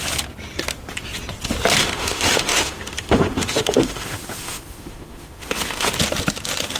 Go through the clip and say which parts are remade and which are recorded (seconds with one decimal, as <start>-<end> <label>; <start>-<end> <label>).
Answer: 0.0-1.8 recorded; 1.8-5.9 remade; 5.9-6.8 recorded